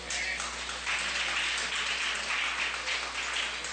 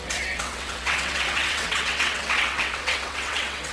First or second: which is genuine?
first